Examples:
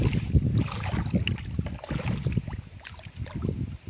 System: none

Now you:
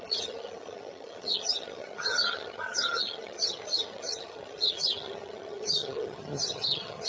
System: vocoder, HiFi-GAN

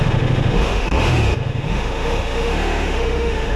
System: autoencoder, DAC-VAE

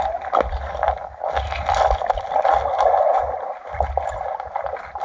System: none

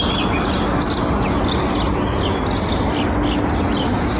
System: none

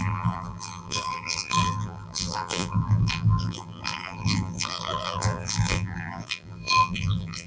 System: vocoder, BigVGAN v2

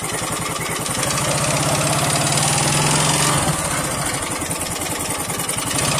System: none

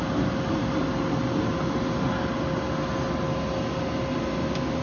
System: none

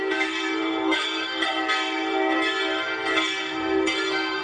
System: codec, SNAC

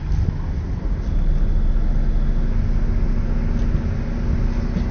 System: none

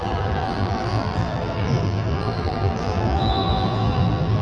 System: vocoder, BigVGAN v2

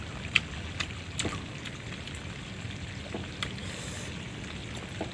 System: none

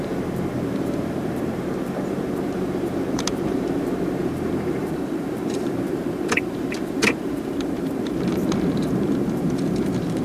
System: vocoder, BigVGAN v2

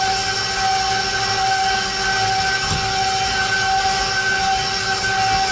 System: none